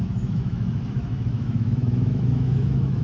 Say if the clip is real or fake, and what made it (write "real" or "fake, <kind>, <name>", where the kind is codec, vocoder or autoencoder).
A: fake, autoencoder, DAC-VAE